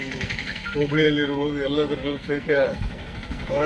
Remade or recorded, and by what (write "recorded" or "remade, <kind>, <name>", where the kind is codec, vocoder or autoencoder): remade, codec, SNAC